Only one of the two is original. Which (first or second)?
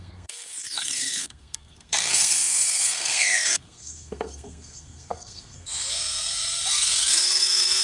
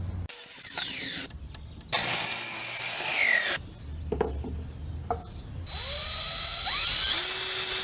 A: second